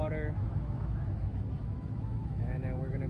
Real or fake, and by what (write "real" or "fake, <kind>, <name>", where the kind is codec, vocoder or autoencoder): fake, autoencoder, DAC-VAE